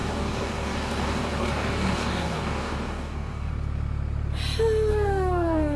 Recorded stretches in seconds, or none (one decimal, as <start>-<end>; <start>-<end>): 3.5-4.9